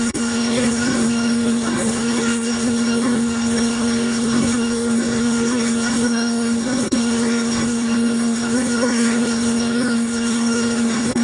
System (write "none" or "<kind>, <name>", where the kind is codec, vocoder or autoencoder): codec, SNAC